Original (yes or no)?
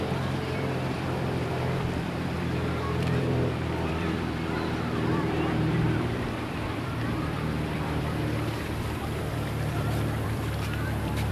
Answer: no